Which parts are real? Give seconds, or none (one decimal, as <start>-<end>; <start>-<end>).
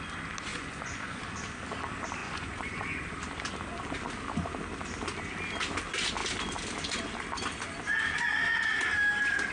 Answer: 0.0-0.5; 1.2-2.2; 3.1-9.5